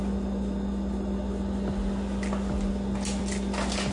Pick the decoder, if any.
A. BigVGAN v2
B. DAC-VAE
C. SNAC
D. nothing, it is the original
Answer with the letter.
D